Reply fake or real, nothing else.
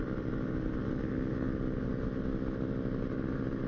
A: real